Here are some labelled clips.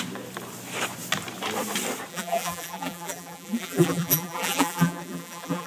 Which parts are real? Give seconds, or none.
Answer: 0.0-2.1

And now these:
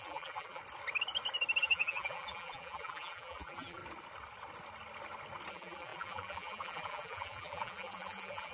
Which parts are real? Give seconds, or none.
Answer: 0.6-1.6; 3.8-5.5